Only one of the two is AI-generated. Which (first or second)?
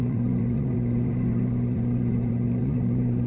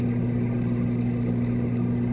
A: first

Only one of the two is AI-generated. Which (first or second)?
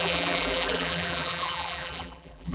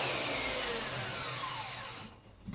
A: first